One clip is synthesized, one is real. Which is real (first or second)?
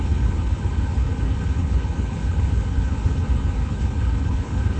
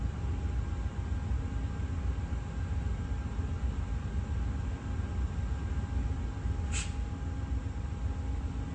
second